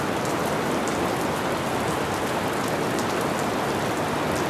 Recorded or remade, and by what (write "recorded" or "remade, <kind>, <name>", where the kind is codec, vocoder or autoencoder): recorded